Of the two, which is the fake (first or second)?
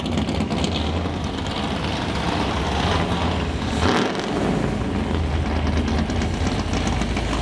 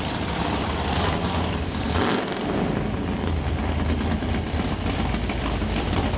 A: second